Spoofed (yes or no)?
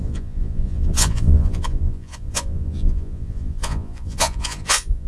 yes